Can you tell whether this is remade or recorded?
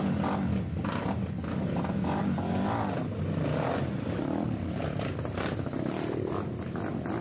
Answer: recorded